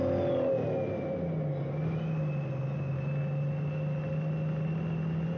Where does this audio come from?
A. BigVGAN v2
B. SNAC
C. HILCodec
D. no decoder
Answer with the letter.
D